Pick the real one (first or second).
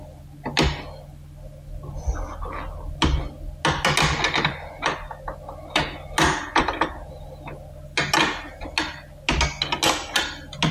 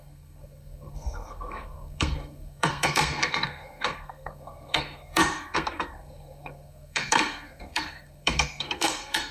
first